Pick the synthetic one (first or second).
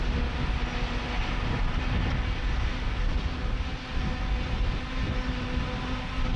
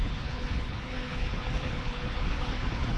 second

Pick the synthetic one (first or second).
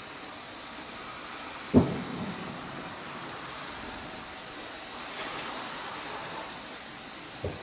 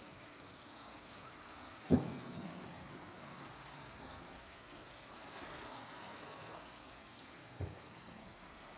second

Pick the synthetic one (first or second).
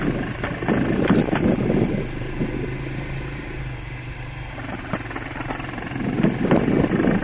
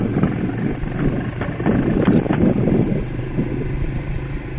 second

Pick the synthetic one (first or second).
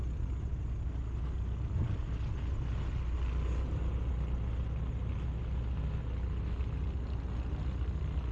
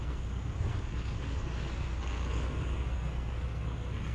second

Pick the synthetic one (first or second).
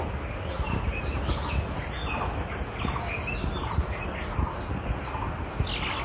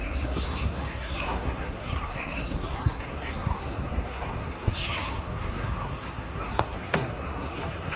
second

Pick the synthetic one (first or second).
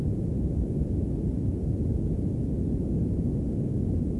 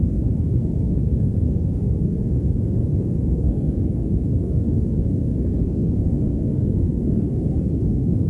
second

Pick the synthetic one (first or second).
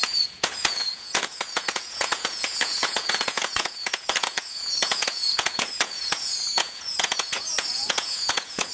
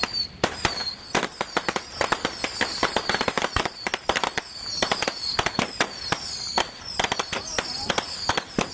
first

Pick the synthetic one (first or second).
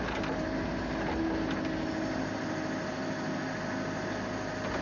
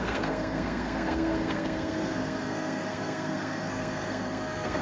second